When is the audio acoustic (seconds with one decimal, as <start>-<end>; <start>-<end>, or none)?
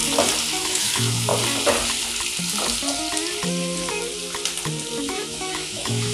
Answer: 0.0-0.6; 1.3-5.0